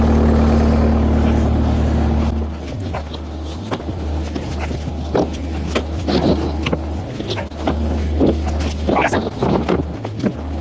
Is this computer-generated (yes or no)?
no